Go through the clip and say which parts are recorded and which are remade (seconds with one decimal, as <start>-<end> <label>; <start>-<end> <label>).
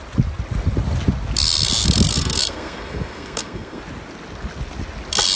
0.0-2.1 recorded; 2.1-3.8 remade; 3.8-5.4 recorded